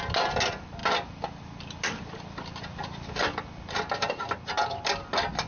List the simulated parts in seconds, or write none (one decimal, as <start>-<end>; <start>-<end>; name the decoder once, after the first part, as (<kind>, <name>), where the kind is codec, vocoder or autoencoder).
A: none